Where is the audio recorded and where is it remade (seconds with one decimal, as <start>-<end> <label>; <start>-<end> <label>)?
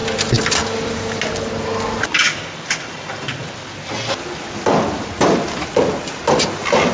0.0-6.9 recorded